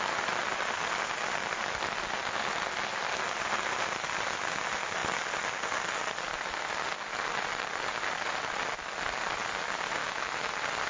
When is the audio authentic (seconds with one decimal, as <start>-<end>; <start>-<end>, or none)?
0.0-10.0; 10.5-10.9